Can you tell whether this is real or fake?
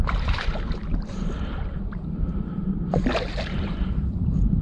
fake